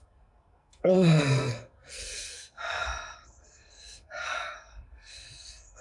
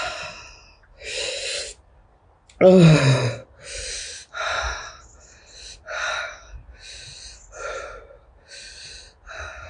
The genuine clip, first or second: second